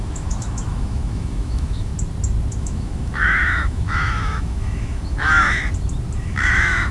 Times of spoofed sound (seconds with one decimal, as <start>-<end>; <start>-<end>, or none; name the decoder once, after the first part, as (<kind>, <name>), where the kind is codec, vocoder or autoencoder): 0.0-1.9 (autoencoder, DAC-VAE); 2.6-5.6; 6.2-6.9

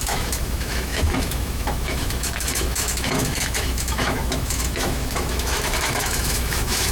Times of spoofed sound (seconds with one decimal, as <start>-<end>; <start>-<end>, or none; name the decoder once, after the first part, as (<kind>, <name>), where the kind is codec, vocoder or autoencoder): 0.0-6.9 (autoencoder, DAC-VAE)

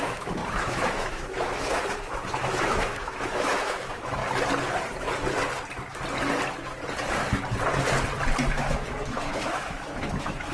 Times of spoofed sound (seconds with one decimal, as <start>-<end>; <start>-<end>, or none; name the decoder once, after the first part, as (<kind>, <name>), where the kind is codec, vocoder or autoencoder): 0.0-4.2 (autoencoder, DAC-VAE); 8.5-10.5

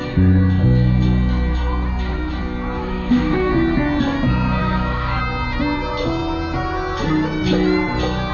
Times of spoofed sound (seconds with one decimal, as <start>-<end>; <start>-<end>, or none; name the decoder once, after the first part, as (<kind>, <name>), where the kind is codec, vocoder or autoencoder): 2.8-3.5 (autoencoder, DAC-VAE); 4.6-5.2

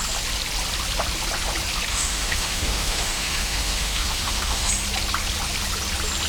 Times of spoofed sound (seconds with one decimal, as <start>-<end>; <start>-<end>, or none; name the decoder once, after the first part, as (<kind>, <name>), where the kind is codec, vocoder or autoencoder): 1.9-4.7 (autoencoder, DAC-VAE)

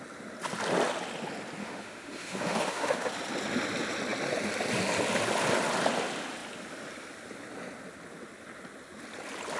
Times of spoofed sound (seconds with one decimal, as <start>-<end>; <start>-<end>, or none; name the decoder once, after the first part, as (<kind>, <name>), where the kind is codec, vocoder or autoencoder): 1.6-3.1 (autoencoder, DAC-VAE)

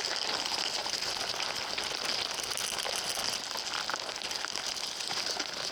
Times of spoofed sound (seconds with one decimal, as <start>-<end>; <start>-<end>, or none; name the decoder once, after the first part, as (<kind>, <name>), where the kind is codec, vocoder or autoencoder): none

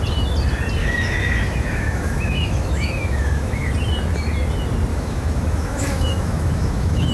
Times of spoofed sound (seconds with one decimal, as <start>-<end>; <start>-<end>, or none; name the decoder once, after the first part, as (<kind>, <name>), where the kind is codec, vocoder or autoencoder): 0.8-3.7 (autoencoder, DAC-VAE); 4.9-7.1